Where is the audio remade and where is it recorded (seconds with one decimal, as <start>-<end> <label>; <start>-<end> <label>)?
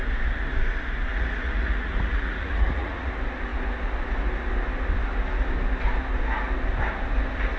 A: 0.0-1.1 recorded; 1.1-3.1 remade; 3.1-7.6 recorded